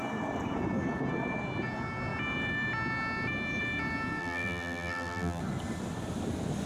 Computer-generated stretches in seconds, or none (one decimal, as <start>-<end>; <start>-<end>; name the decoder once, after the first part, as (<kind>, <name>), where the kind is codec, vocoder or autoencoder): 4.2-5.4 (vocoder, BigVGAN v2)